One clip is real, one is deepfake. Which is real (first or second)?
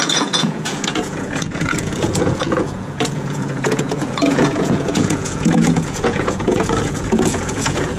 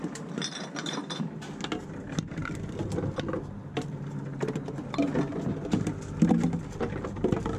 second